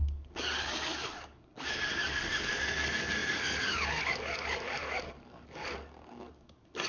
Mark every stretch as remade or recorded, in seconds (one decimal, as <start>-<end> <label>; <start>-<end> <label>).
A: 0.0-6.9 remade